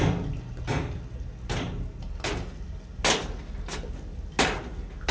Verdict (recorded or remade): recorded